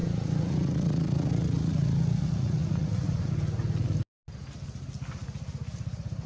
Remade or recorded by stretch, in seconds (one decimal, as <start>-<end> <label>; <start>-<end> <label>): 0.0-3.3 remade; 3.3-6.3 recorded